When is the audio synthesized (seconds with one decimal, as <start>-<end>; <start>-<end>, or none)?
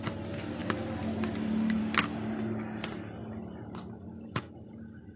none